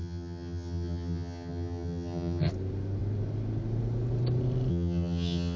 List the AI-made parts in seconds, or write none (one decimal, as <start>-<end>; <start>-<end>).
0.0-2.5; 4.7-5.6